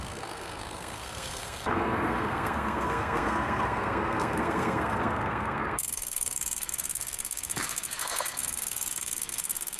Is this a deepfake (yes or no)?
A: yes